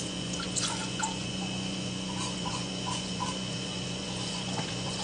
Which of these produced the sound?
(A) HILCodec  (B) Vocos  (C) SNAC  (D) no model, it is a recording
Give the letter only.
B